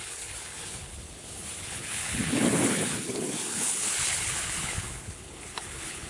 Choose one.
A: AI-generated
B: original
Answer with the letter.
A